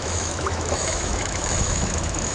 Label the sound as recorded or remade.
remade